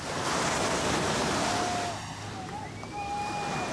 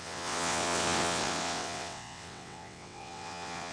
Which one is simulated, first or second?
second